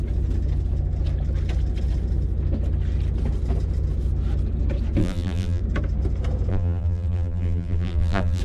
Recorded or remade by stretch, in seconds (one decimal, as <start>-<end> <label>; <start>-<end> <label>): 0.0-5.0 recorded; 5.0-5.6 remade; 5.6-6.5 recorded; 6.5-8.4 remade